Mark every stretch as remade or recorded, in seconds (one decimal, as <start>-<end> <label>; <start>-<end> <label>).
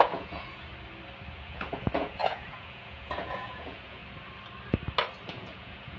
0.0-0.7 remade; 0.7-1.3 recorded; 1.3-4.0 remade; 4.0-5.3 recorded; 5.3-6.0 remade